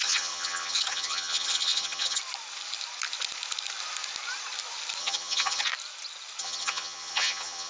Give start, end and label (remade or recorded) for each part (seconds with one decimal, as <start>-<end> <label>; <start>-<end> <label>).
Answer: 0.0-2.2 remade; 2.2-5.0 recorded; 5.0-5.7 remade; 5.7-6.4 recorded; 6.4-7.7 remade